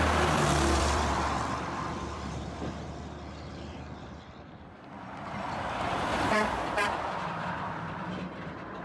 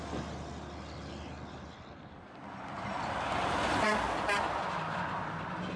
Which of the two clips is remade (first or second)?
first